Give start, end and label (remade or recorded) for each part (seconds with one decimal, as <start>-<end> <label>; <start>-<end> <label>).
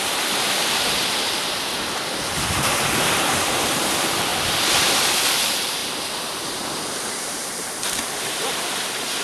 0.0-4.3 remade; 4.3-5.1 recorded; 5.1-5.8 remade; 5.8-7.2 recorded; 7.2-9.2 remade